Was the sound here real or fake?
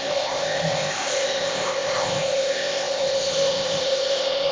fake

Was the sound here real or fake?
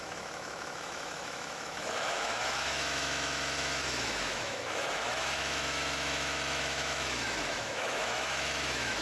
fake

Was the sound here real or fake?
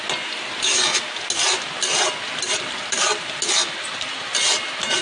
real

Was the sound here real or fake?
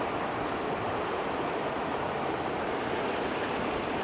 real